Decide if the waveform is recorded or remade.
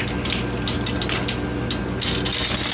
recorded